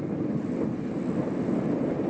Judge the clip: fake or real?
real